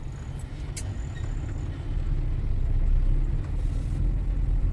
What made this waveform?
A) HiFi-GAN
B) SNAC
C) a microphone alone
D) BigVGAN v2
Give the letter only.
C